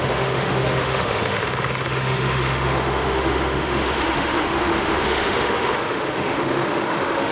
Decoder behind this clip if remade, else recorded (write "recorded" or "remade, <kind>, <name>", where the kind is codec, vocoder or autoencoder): remade, autoencoder, DAC-VAE